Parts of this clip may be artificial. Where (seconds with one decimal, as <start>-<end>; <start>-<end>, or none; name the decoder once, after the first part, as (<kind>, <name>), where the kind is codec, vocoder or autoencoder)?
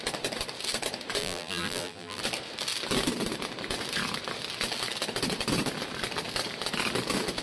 1.2-2.2 (vocoder, BigVGAN v2)